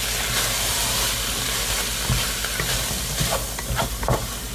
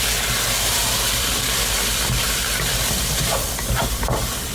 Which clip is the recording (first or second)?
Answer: first